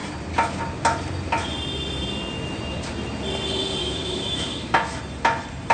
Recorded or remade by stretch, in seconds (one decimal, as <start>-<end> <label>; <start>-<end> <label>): 0.0-3.8 recorded; 3.8-5.0 remade; 5.0-5.7 recorded